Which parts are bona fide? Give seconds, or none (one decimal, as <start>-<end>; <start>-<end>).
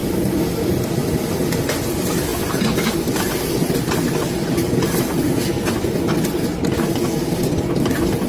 0.0-1.3; 4.6-7.7